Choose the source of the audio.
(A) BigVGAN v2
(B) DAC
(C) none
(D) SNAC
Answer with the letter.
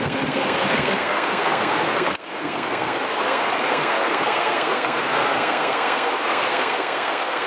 D